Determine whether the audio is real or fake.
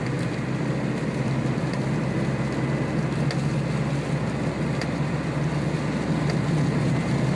real